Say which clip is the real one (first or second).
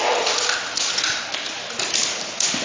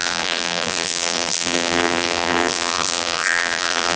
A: first